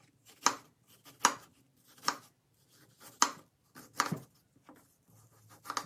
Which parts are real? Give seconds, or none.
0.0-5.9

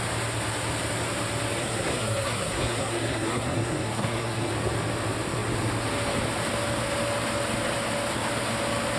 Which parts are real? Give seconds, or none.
0.0-1.6; 4.5-9.0

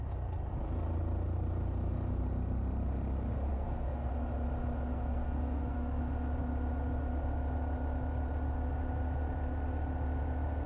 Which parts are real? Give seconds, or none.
0.0-3.5; 4.1-4.9; 6.0-10.7

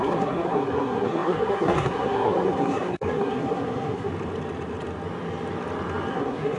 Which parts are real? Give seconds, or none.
4.1-6.1

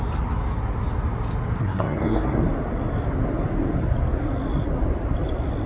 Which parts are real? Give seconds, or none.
0.0-1.6; 2.4-5.7

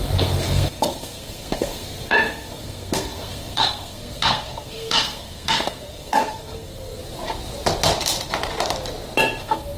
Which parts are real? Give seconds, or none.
7.0-9.4